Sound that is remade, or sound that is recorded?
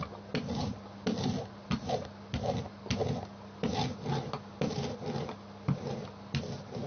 recorded